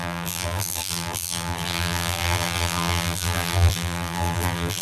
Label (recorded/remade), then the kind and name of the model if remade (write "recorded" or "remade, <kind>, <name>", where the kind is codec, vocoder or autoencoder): remade, vocoder, BigVGAN v2